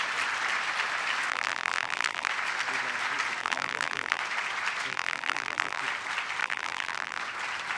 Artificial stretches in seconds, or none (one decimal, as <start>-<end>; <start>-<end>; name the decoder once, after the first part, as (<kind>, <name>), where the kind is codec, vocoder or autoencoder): 1.3-2.3 (vocoder, BigVGAN v2); 3.4-4.2; 4.9-5.8; 6.4-7.2